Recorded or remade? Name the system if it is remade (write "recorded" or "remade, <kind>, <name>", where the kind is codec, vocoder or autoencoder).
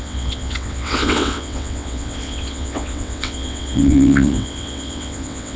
remade, vocoder, WaveNeXt